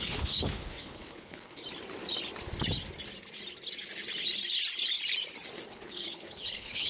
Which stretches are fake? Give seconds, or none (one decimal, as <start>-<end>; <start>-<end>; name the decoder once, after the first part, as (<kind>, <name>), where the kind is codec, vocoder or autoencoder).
0.0-1.6 (codec, HILCodec); 5.7-6.9